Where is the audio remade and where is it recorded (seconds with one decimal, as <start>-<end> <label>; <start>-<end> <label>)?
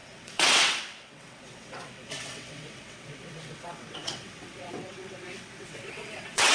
0.0-6.5 remade